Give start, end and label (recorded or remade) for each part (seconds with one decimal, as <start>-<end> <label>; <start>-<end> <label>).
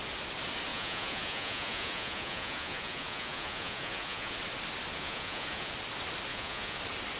0.0-0.7 recorded; 0.7-4.4 remade; 4.4-4.9 recorded; 4.9-5.7 remade; 5.7-6.3 recorded; 6.3-6.8 remade; 6.8-7.2 recorded